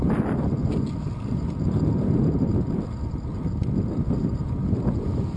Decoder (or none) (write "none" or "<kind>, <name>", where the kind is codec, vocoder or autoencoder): none